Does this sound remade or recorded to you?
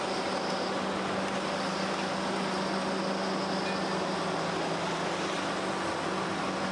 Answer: recorded